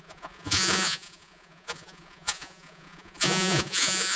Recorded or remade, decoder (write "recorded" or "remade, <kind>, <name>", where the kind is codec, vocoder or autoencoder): remade, vocoder, Vocos